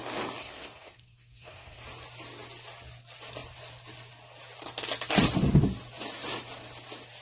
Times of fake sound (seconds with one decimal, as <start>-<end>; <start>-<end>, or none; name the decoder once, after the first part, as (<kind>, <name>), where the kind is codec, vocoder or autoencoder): 0.4-1.8 (codec, SNAC)

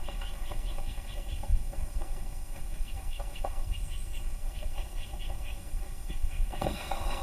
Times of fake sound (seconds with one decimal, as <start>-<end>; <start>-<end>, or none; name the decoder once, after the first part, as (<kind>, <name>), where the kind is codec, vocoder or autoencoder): 0.0-7.2 (codec, SNAC)

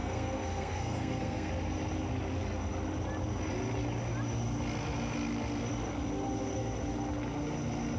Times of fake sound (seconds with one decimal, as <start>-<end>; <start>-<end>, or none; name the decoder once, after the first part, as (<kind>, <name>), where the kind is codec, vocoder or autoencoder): 0.0-1.5 (codec, SNAC)

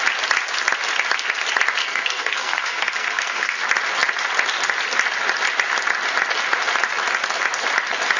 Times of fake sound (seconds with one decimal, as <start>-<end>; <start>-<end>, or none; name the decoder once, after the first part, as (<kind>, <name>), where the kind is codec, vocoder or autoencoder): 1.8-3.6 (codec, SNAC)

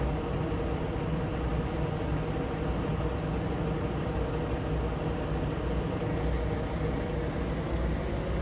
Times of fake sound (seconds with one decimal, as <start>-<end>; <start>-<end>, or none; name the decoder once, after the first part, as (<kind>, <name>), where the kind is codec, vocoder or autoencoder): none

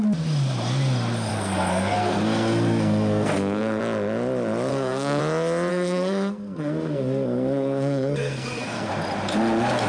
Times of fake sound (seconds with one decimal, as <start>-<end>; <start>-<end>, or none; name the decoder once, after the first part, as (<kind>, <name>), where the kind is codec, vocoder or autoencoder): 1.3-3.8 (codec, SNAC); 4.7-5.2; 5.7-8.9

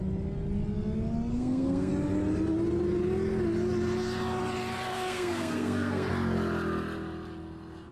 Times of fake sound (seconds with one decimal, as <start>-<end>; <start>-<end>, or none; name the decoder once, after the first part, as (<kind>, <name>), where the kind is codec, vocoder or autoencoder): 1.3-1.9 (codec, SNAC); 4.9-6.1

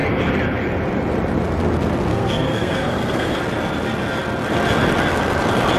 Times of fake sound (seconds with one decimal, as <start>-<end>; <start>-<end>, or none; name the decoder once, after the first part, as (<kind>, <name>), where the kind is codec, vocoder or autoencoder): 2.1-3.4 (codec, SNAC)